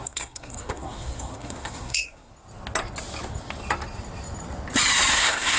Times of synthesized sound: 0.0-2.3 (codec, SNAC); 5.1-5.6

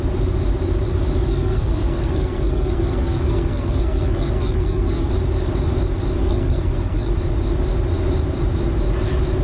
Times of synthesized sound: 1.3-5.1 (codec, SNAC); 6.2-7.1